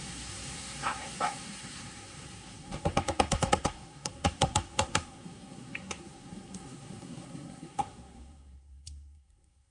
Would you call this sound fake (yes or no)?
yes